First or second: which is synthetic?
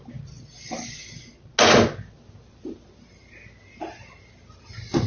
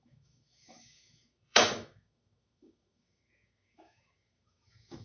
second